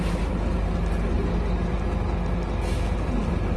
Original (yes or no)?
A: yes